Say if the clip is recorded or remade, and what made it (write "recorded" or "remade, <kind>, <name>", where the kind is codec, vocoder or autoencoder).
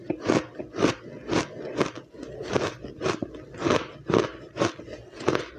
recorded